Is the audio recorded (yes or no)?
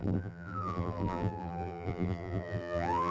no